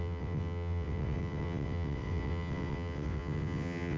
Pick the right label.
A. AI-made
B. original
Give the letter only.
A